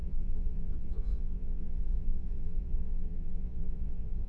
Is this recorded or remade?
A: remade